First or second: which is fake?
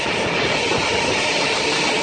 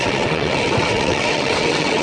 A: second